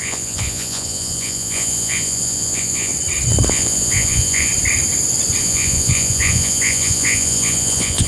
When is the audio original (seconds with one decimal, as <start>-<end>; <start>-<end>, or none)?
2.9-3.5; 4.5-5.4